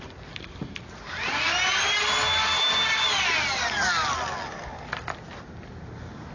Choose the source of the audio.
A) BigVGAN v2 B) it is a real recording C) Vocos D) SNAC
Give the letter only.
B